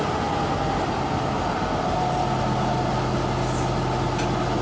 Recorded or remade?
recorded